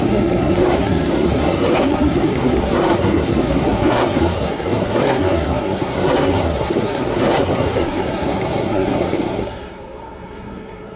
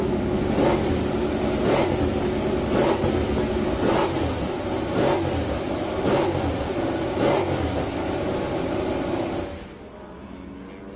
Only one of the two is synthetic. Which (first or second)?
first